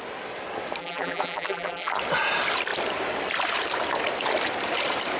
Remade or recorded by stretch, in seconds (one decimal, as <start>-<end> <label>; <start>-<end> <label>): 0.0-0.8 recorded; 0.8-1.9 remade; 1.9-5.2 recorded